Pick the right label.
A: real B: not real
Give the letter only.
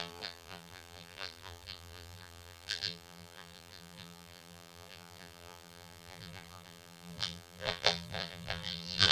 B